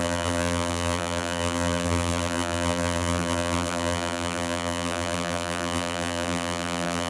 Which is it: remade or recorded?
remade